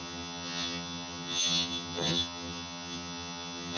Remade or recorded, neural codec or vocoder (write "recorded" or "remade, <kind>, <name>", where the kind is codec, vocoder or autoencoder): remade, vocoder, HiFi-GAN